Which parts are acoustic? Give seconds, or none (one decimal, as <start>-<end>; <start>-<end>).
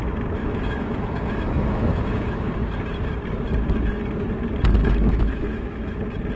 0.0-0.4; 2.5-4.8; 6.0-6.4